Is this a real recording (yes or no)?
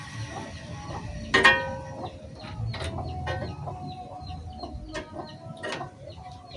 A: yes